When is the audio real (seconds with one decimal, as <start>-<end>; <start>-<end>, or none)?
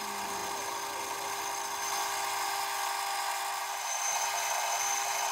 0.0-5.3